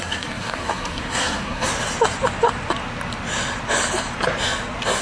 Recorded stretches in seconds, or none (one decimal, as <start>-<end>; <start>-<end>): 1.7-5.0